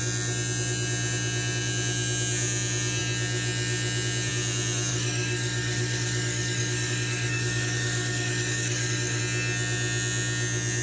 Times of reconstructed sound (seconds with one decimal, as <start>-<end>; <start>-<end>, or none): 4.9-9.2

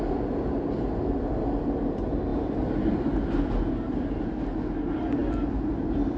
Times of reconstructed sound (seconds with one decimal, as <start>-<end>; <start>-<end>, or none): none

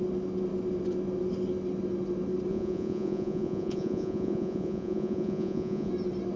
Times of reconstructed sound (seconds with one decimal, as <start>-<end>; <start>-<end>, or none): 2.5-5.9

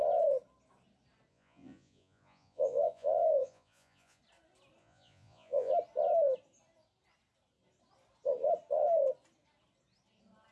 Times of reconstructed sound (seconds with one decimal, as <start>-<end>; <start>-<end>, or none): 1.3-4.2; 4.8-5.7

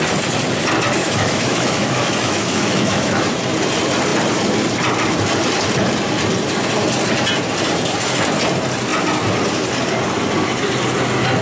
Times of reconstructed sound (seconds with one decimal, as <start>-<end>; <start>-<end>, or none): 1.0-3.3

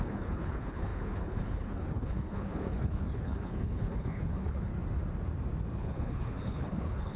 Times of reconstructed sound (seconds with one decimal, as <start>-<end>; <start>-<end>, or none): 0.0-4.7; 5.8-7.2

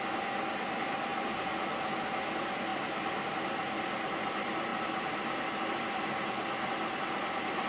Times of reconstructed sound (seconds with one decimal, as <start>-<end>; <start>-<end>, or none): 2.7-3.3

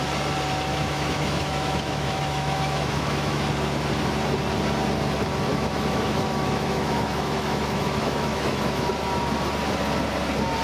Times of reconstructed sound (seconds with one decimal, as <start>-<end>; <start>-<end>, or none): 0.7-3.5; 5.5-8.9